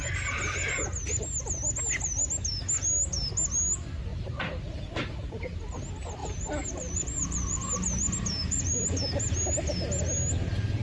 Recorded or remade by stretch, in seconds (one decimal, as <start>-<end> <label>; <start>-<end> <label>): 0.0-4.1 recorded; 4.1-5.8 remade; 5.8-6.2 recorded; 6.2-7.7 remade; 7.7-8.4 recorded; 8.4-9.0 remade; 9.0-10.8 recorded